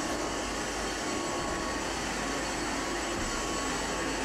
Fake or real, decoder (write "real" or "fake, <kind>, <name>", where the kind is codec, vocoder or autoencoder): real